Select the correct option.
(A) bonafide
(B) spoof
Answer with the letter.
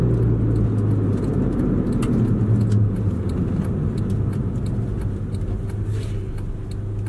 A